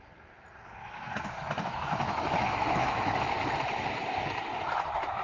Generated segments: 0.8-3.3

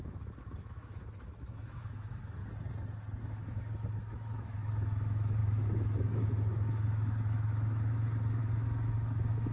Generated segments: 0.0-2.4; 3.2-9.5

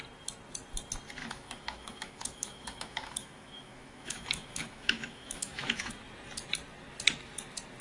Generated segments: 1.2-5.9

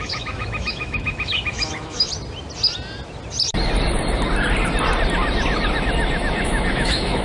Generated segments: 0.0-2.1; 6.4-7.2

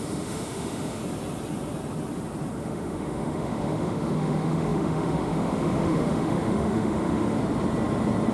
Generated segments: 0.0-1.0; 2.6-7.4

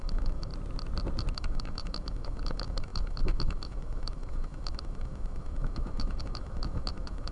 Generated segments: 0.0-0.5; 1.3-7.3

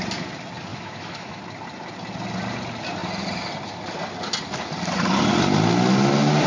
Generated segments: 0.7-1.4